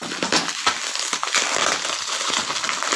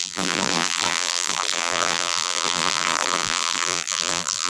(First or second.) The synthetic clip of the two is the second